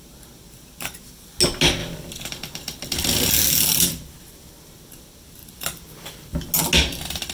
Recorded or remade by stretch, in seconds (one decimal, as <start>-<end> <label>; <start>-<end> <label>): 0.0-1.8 recorded; 1.8-3.3 remade; 3.3-5.4 recorded; 5.4-6.4 remade; 6.4-7.3 recorded